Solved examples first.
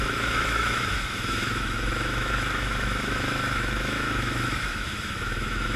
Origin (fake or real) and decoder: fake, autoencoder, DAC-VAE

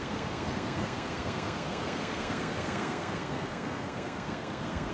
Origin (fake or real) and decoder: fake, codec, SNAC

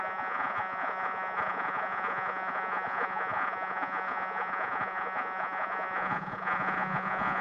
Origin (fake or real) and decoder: fake, vocoder, Vocos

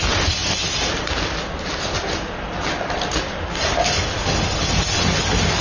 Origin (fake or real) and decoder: real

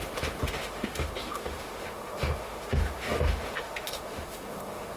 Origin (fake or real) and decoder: fake, autoencoder, DAC-VAE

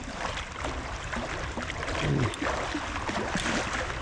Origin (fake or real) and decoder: real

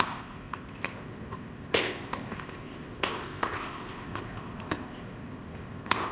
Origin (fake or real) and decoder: fake, codec, ZipCodec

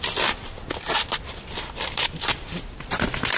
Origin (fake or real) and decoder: real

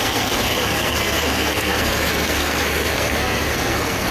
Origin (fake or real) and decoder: fake, codec, SNAC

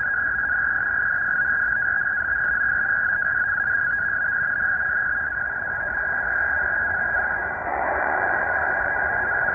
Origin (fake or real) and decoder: fake, vocoder, Vocos